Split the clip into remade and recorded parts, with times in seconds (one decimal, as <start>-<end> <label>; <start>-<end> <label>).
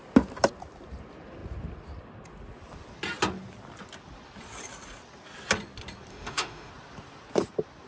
0.0-6.1 recorded; 6.1-6.7 remade; 6.7-7.9 recorded